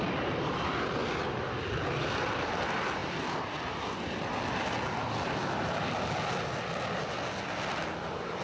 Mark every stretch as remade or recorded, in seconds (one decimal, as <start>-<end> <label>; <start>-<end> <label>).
0.0-8.4 recorded